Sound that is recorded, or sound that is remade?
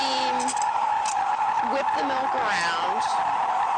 recorded